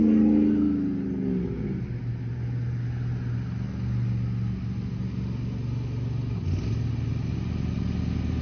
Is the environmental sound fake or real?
real